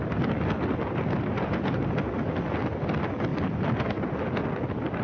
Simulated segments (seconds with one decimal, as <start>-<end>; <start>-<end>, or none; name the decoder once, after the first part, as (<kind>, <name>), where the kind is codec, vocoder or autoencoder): 0.7-1.9 (vocoder, BigVGAN v2)